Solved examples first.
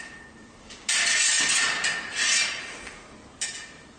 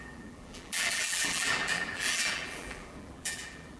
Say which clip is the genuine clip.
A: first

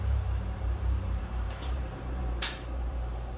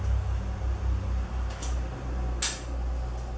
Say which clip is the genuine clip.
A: second